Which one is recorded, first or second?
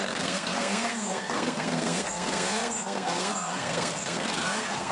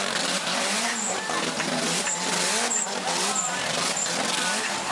second